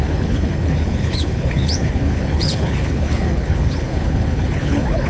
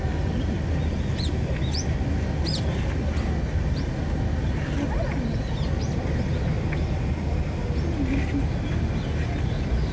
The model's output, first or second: first